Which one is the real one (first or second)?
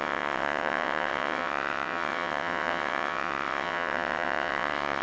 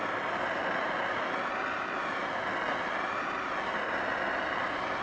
second